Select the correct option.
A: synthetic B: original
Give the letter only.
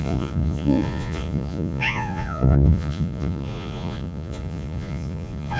A